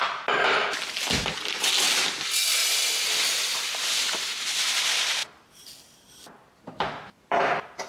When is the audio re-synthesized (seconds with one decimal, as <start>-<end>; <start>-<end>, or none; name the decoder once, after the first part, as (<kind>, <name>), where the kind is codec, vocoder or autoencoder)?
none